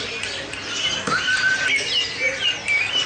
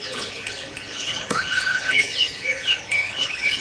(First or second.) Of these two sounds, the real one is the first